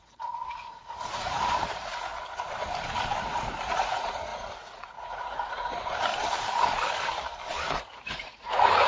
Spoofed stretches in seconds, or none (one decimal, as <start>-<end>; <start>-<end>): 0.0-2.1; 3.2-6.1; 7.8-8.9